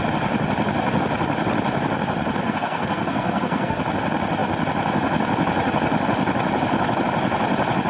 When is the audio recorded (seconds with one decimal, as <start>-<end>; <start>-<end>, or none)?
0.0-2.4; 3.8-7.9